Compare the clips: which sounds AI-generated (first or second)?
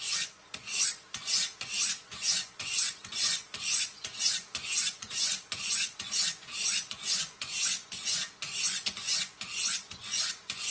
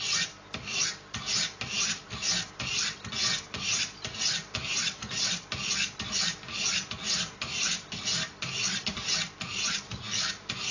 first